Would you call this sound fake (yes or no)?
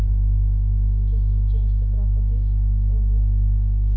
yes